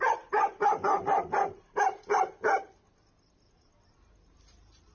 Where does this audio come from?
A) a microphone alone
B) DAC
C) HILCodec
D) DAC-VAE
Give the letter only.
A